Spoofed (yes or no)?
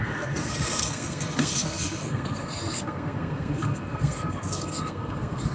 yes